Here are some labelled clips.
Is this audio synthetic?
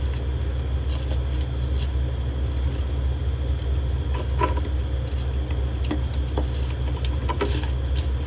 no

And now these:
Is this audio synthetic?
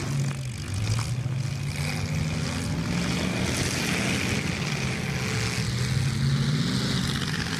no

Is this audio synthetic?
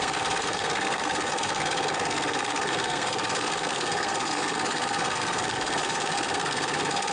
yes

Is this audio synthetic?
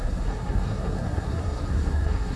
yes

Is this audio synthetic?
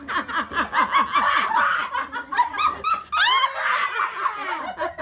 no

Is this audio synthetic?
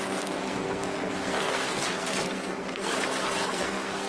yes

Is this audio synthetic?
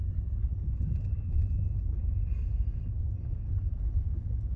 no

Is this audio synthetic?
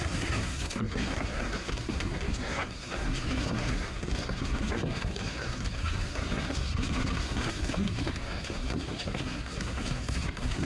yes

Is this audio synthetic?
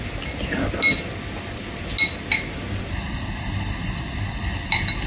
no